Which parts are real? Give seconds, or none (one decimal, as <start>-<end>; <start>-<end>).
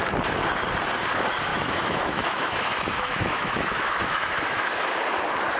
0.0-1.5; 4.9-5.6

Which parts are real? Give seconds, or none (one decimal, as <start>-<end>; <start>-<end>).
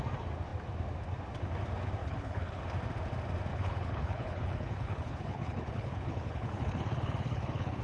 0.0-2.0; 2.6-3.5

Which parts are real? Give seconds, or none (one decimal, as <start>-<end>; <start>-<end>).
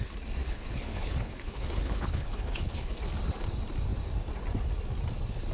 0.0-0.4; 3.0-5.5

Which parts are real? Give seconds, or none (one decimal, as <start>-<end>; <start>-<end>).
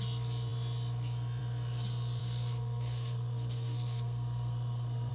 0.0-2.2